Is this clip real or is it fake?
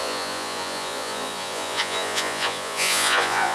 fake